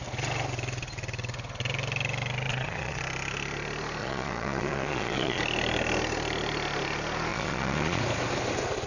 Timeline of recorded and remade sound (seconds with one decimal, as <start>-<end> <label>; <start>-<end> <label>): 0.0-2.5 recorded; 2.5-3.0 remade; 3.0-4.0 recorded; 4.0-5.4 remade; 5.4-7.3 recorded; 7.3-8.0 remade; 8.0-8.9 recorded